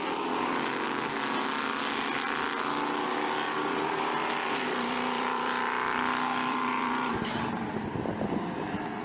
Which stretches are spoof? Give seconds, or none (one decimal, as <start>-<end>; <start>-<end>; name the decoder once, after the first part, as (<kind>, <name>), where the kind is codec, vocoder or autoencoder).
4.2-9.0 (vocoder, BigVGAN v2)